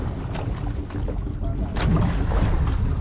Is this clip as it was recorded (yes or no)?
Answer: yes